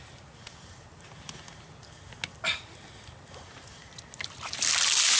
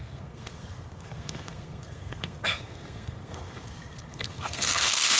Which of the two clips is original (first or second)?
first